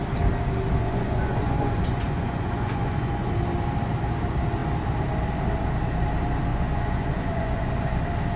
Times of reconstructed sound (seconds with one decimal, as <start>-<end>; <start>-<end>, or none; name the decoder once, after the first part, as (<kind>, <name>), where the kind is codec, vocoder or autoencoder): 0.8-3.3 (vocoder, Vocos); 6.5-8.0